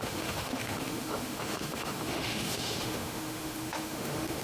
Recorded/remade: remade